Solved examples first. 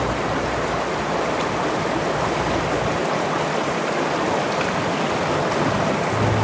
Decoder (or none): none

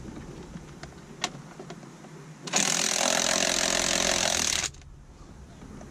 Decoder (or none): none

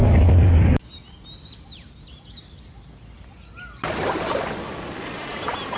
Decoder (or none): none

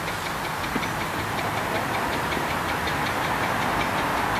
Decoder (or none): none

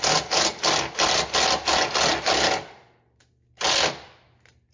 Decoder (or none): none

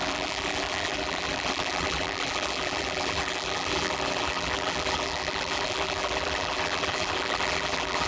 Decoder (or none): vocoder, BigVGAN v2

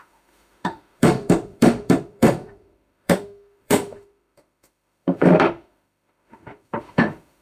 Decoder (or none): autoencoder, DAC-VAE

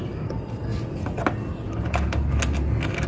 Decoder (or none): none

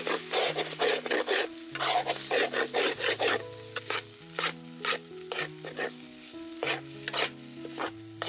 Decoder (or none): none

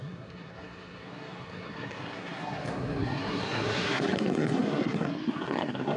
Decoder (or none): codec, SNAC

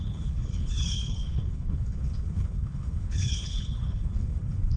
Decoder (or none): codec, HILCodec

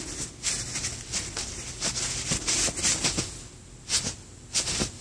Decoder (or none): none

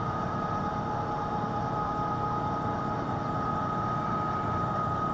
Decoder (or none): vocoder, BigVGAN v2